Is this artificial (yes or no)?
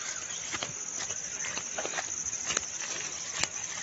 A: no